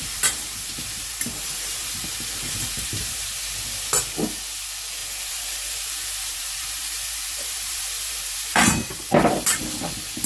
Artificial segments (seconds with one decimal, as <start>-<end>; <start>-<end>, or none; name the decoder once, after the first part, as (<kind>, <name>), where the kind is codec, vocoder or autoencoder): 0.0-3.2 (vocoder, BigVGAN v2); 5.0-9.6